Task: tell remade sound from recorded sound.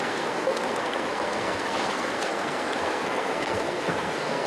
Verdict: remade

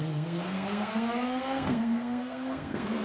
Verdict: remade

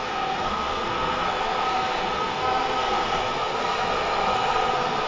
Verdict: remade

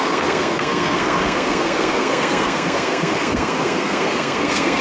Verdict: remade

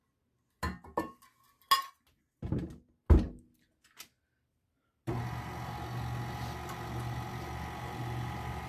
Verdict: recorded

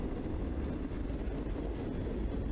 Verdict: recorded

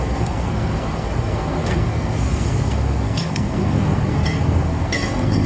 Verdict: remade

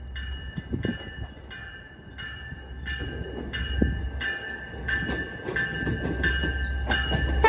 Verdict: recorded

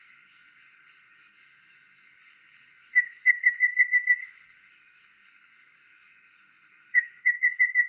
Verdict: remade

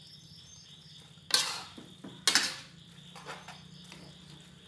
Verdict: recorded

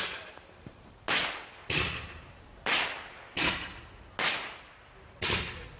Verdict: recorded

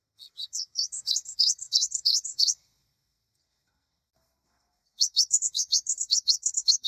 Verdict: remade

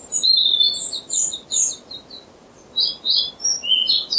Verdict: recorded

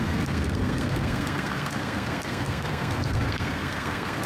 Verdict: remade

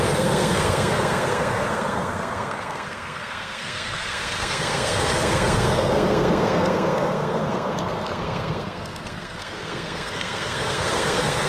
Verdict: remade